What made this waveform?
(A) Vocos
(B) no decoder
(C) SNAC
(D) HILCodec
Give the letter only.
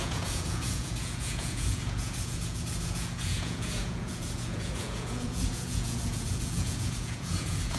A